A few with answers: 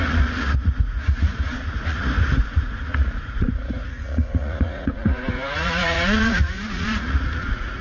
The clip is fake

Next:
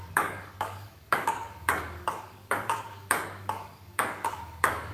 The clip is fake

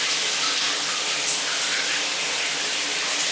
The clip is real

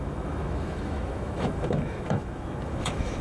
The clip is fake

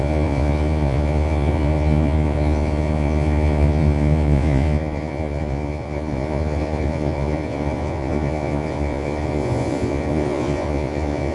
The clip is fake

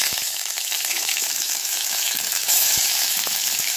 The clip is fake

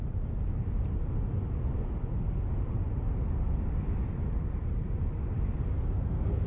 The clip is real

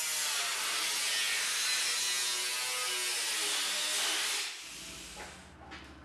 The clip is real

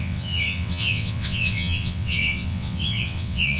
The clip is fake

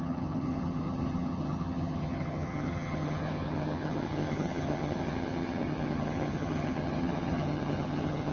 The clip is fake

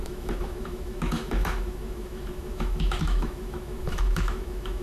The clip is fake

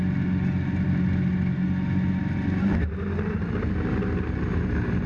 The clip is real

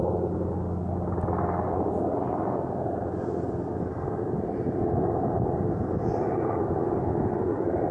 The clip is real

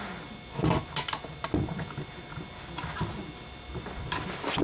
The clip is real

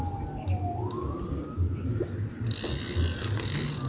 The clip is real